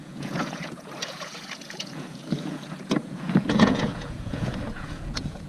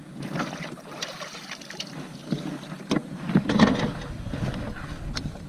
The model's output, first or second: first